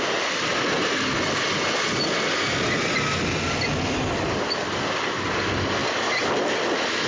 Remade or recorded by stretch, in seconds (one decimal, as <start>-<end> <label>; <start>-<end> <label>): 0.0-7.1 recorded